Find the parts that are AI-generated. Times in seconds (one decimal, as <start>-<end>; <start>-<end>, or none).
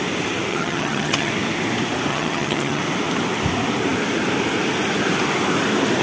0.5-1.3; 2.1-2.8